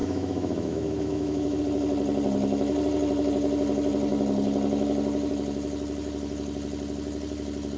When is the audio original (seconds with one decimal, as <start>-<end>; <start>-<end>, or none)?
1.6-7.8